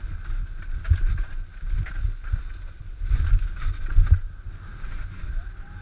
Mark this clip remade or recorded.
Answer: recorded